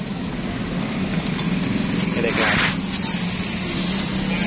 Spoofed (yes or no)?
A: no